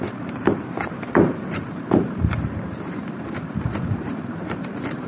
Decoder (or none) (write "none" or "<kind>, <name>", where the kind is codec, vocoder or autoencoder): vocoder, BigVGAN v2